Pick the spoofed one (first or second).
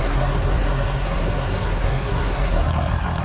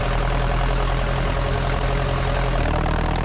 first